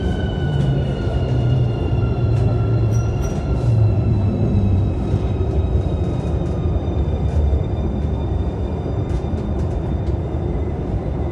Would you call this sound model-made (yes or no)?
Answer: yes